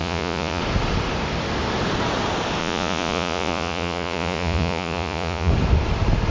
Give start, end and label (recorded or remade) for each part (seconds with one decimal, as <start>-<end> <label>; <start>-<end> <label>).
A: 0.0-0.6 remade; 0.6-2.6 recorded; 2.6-5.5 remade; 5.5-6.3 recorded